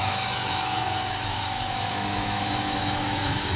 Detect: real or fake fake